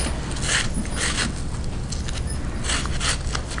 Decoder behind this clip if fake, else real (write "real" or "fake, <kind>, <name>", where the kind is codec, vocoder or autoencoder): real